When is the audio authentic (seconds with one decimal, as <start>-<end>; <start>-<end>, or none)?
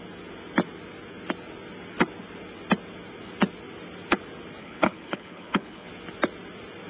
0.0-4.6; 5.9-6.9